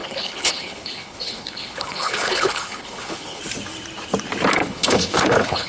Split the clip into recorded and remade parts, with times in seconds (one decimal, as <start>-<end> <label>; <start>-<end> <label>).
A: 0.0-3.4 remade; 3.4-4.6 recorded; 4.6-5.7 remade